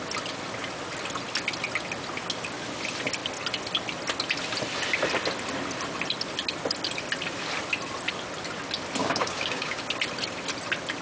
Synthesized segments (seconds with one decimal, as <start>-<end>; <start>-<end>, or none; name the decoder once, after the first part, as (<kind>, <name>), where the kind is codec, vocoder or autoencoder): 9.0-9.8 (codec, DAC)